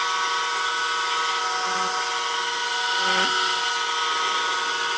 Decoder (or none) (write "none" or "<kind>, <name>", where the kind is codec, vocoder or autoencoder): none